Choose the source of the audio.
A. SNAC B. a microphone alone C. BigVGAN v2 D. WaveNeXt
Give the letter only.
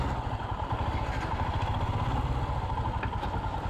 B